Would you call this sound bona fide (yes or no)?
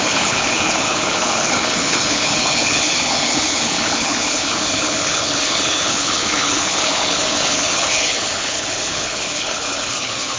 no